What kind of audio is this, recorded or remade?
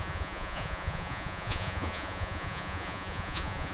remade